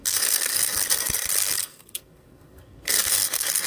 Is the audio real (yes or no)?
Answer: no